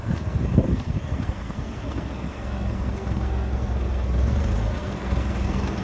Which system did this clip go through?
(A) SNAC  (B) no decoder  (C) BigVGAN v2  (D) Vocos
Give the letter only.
A